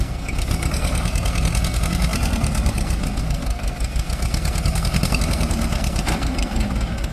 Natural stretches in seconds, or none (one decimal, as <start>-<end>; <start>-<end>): none